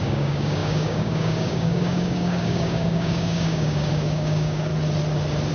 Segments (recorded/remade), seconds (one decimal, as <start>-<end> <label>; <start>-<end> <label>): 0.0-4.7 remade; 4.7-5.5 recorded